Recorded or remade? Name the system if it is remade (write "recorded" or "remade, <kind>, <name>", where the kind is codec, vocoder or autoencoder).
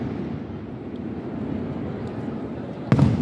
recorded